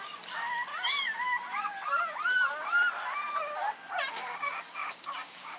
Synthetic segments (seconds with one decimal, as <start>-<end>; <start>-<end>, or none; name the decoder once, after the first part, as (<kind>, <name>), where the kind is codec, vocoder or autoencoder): 0.0-0.7 (codec, DAC); 4.1-5.6